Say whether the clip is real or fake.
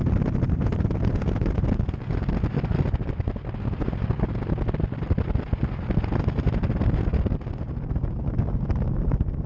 real